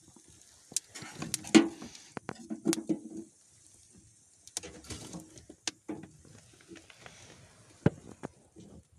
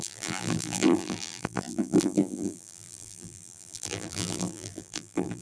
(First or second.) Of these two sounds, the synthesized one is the second